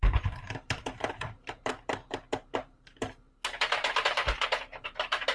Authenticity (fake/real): fake